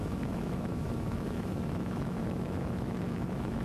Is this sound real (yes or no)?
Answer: no